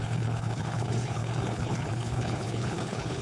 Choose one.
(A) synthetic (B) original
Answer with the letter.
A